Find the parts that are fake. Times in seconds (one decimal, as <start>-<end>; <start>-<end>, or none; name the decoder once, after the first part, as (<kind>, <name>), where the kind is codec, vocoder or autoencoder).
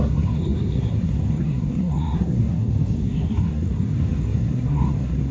0.0-5.3 (codec, SNAC)